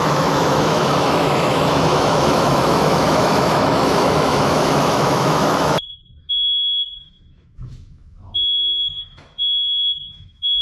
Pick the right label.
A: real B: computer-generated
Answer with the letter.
B